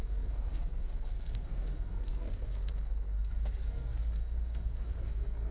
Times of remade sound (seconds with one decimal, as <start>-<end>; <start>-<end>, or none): 0.0-5.5